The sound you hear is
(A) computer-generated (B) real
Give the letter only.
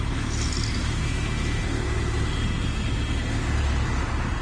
B